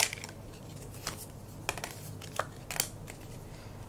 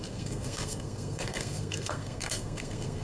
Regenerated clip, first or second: second